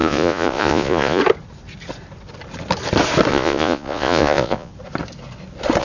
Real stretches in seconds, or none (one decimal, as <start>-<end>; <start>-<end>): 1.2-3.3; 4.7-5.8